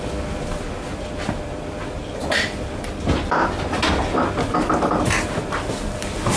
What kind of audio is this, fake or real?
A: fake